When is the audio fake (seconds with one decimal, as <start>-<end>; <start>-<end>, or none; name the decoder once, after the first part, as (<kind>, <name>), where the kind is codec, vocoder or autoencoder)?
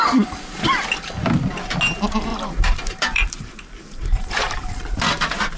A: 2.3-4.7 (vocoder, BigVGAN v2)